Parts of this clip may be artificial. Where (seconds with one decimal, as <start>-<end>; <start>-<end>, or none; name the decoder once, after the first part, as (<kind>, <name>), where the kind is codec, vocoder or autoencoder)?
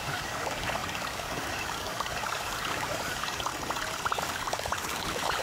0.0-3.5 (codec, DAC); 4.2-5.4